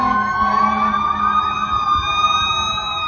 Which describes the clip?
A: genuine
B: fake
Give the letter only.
A